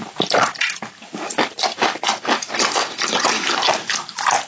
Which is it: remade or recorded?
recorded